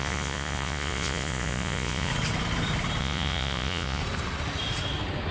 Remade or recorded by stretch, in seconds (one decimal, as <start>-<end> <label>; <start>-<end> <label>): 0.0-2.1 remade; 2.1-3.0 recorded; 3.0-4.0 remade; 4.0-5.3 recorded